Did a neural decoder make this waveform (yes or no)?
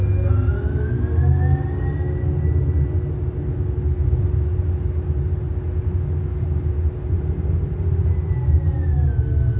no